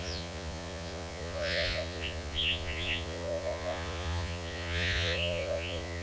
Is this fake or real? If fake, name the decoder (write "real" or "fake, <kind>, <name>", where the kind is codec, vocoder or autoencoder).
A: fake, vocoder, Vocos